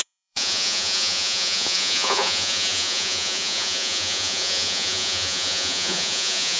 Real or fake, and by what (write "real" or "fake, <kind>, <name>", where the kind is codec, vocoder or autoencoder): fake, vocoder, Vocos